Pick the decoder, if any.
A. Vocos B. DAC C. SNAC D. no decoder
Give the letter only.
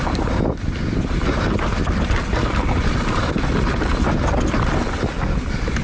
D